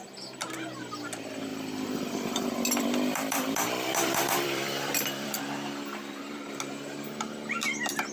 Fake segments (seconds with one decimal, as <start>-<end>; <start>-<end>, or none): 1.5-5.4